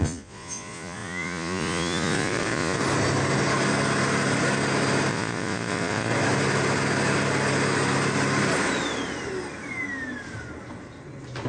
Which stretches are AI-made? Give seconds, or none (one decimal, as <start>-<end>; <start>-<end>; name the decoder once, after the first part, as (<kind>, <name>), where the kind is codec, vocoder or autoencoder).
0.0-2.8 (vocoder, Vocos); 5.1-6.1